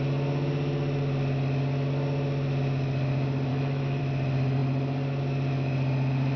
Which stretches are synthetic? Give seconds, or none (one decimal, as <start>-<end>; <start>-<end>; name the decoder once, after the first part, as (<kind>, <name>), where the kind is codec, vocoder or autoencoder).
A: 3.5-4.0 (autoencoder, DAC-VAE)